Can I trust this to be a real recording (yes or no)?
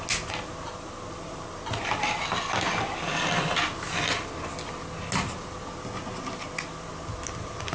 yes